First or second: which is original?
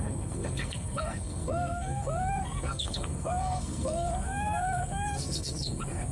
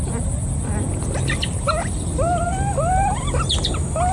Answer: second